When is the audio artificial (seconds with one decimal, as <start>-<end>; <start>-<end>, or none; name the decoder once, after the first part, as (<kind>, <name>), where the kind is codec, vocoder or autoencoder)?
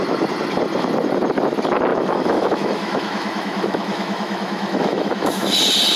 1.9-5.5 (autoencoder, DAC-VAE)